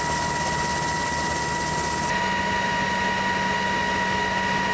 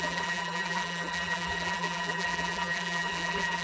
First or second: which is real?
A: first